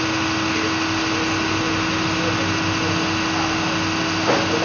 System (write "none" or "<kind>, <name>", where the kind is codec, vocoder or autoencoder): none